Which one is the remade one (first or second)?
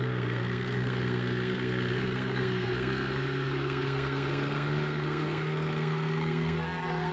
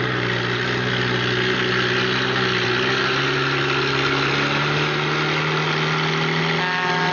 first